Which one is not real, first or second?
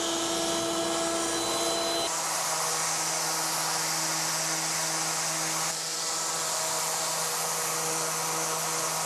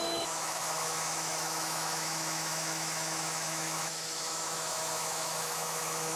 second